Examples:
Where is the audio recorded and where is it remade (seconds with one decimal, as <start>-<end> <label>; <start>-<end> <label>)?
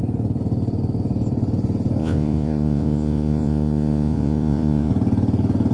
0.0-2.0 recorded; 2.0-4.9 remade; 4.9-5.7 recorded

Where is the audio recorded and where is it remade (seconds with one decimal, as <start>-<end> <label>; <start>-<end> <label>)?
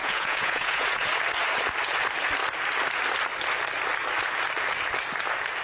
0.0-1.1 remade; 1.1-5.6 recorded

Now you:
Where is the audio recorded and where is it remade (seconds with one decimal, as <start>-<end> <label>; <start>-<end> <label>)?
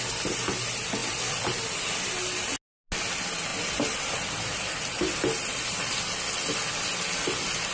0.0-1.0 recorded; 1.0-2.0 remade; 2.0-3.5 recorded; 3.5-6.0 remade; 6.0-7.7 recorded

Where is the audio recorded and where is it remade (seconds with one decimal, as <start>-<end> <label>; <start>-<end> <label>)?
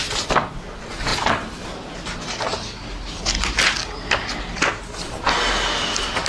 0.0-6.3 recorded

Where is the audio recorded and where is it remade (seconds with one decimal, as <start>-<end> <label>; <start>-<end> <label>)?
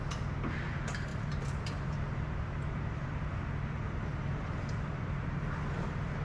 0.0-1.1 recorded; 1.1-3.4 remade; 3.4-4.1 recorded; 4.1-5.6 remade; 5.6-6.2 recorded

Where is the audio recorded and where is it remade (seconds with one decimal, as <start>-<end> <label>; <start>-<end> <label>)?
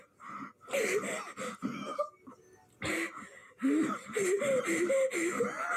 0.0-3.4 recorded; 3.4-4.6 remade; 4.6-5.8 recorded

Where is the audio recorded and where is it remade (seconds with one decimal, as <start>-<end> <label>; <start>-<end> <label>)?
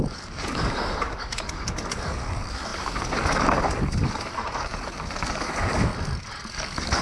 0.0-5.9 remade; 5.9-6.5 recorded; 6.5-7.0 remade